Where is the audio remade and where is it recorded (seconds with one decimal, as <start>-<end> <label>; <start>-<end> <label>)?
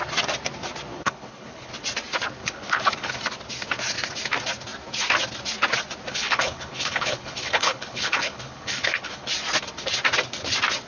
0.0-0.9 recorded; 0.9-1.7 remade; 1.7-2.4 recorded; 2.4-3.1 remade; 3.1-6.1 recorded; 6.1-9.3 remade; 9.3-10.9 recorded